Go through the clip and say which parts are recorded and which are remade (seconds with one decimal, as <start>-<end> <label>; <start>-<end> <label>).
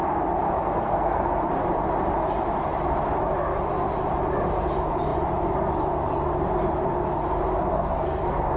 0.0-0.6 recorded; 0.6-1.4 remade; 1.4-7.7 recorded; 7.7-8.6 remade